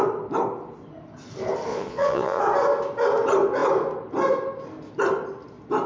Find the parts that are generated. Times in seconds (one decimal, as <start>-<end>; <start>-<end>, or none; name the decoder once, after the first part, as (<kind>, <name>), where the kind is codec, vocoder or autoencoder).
1.7-2.4 (vocoder, Vocos)